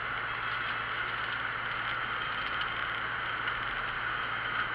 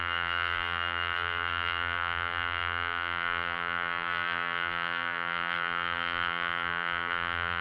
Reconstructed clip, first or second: second